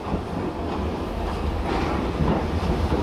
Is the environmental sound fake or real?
real